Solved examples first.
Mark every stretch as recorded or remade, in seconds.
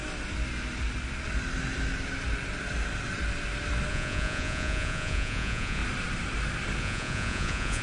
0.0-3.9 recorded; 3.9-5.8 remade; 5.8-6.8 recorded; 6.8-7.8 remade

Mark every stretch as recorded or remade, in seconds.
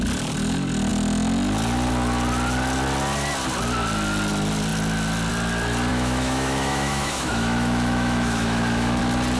0.0-5.9 recorded; 5.9-9.0 remade; 9.0-9.4 recorded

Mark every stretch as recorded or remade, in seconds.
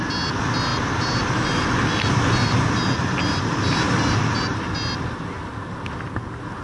0.0-6.6 recorded